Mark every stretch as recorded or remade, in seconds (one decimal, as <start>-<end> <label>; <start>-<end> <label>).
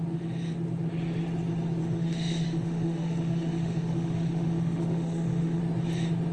0.0-1.8 recorded; 1.8-5.6 remade; 5.6-6.3 recorded